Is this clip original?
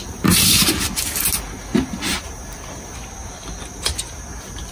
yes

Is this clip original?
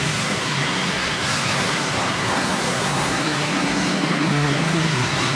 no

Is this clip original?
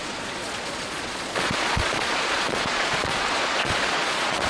no